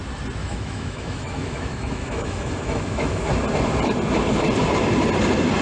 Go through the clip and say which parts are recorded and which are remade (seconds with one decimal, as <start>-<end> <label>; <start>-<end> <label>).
0.0-0.4 recorded; 0.4-3.2 remade; 3.2-5.6 recorded